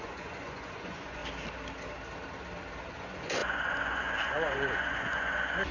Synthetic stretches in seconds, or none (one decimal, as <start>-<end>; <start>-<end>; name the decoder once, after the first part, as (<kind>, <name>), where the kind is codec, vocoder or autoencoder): 0.0-1.2 (vocoder, Vocos); 3.0-5.7